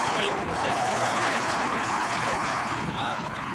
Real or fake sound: fake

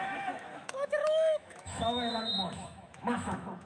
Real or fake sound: fake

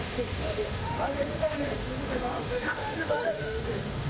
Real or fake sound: fake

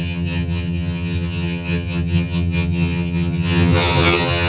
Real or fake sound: fake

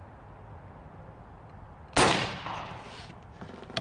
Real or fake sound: real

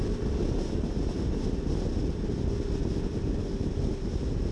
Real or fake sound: real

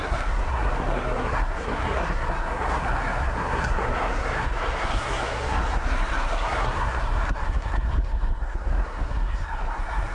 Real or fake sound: fake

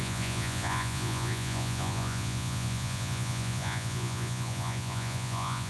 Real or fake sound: fake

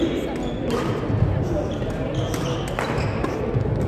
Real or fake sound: real